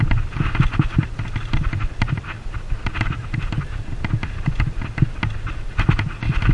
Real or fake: real